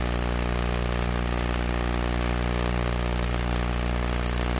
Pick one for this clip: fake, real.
real